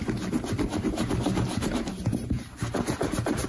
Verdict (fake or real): fake